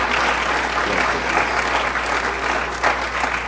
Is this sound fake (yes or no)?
no